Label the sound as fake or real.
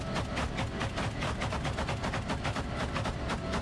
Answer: real